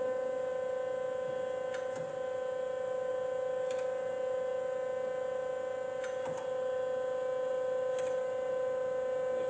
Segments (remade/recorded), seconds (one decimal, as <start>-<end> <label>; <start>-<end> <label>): 0.0-9.5 recorded